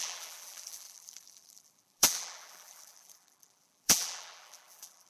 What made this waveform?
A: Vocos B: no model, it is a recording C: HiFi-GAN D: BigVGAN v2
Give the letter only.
D